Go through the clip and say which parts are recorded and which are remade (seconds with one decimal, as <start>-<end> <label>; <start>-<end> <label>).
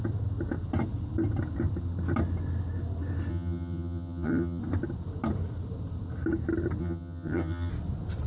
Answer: 0.0-3.3 recorded; 3.3-4.6 remade; 4.6-6.8 recorded; 6.8-7.7 remade; 7.7-8.3 recorded